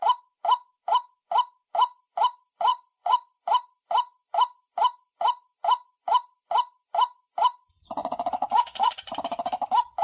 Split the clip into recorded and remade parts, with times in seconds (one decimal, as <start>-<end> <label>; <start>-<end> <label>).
0.0-2.7 recorded; 2.7-3.4 remade; 3.4-8.0 recorded; 8.0-8.9 remade; 8.9-10.0 recorded

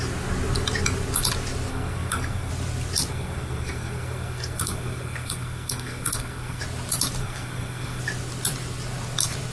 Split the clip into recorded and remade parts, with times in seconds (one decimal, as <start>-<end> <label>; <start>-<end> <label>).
0.0-1.7 recorded; 1.7-2.5 remade; 2.5-3.1 recorded; 3.1-6.6 remade; 6.6-7.2 recorded; 7.2-8.0 remade; 8.0-9.5 recorded

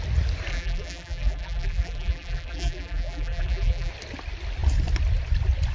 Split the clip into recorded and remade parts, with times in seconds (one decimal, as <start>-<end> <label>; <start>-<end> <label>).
0.0-0.5 recorded; 0.5-3.9 remade; 3.9-5.7 recorded

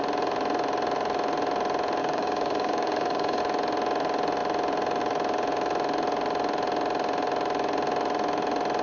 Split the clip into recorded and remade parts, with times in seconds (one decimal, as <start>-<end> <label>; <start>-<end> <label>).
0.0-2.0 recorded; 2.0-3.4 remade; 3.4-8.8 recorded

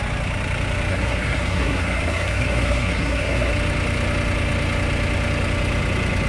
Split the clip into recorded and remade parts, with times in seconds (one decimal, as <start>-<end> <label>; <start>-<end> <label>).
0.0-0.9 recorded; 0.9-3.5 remade; 3.5-6.3 recorded